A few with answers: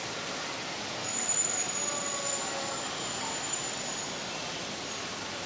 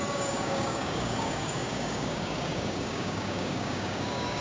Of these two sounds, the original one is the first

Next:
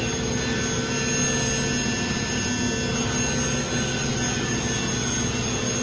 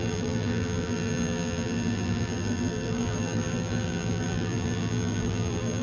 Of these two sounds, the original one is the first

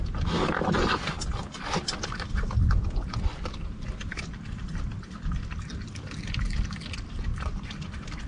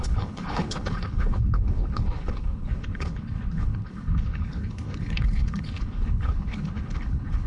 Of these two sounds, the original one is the first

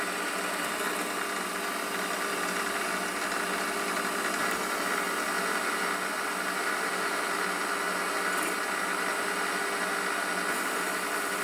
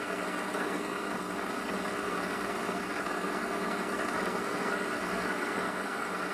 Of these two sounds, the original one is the first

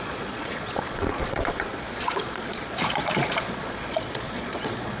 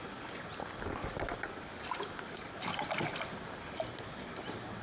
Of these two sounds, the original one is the second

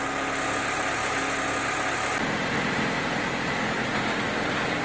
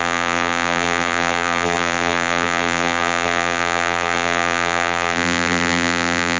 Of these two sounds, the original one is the first